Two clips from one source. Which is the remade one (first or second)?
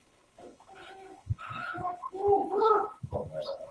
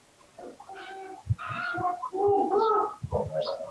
first